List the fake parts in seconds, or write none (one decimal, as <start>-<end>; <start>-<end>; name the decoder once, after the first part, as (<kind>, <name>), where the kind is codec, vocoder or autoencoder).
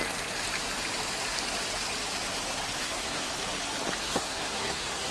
2.8-3.3 (codec, SNAC); 4.0-5.1